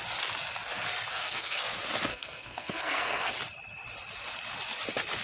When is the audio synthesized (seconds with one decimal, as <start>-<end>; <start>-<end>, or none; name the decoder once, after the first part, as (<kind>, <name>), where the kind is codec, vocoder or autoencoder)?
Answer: 1.1-1.6 (codec, SNAC); 2.1-3.3